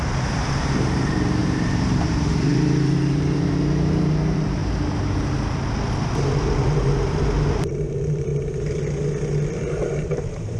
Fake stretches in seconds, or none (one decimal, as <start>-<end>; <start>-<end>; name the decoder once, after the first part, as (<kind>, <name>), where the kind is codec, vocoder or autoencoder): 0.0-4.6 (vocoder, BigVGAN v2); 7.6-8.3; 9.6-10.6